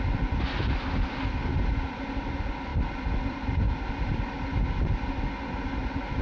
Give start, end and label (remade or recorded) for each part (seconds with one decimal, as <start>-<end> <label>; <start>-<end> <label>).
0.0-6.2 recorded